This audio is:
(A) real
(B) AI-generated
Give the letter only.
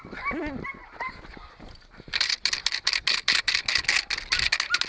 A